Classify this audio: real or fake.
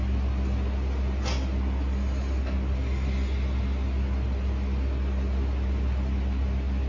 real